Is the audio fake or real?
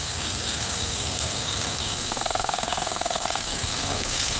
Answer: fake